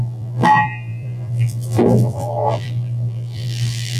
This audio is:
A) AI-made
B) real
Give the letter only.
A